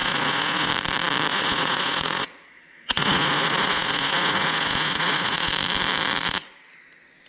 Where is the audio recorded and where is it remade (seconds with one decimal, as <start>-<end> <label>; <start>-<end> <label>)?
0.0-0.7 remade; 0.7-1.3 recorded; 1.3-5.5 remade; 5.5-7.3 recorded